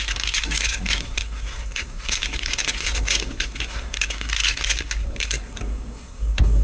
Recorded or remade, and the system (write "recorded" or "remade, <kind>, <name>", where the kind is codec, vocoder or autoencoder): remade, codec, SNAC